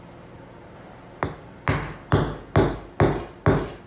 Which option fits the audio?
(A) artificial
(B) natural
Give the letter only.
B